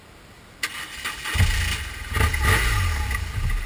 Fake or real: real